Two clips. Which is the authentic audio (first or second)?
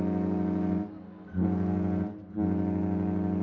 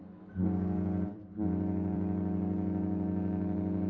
first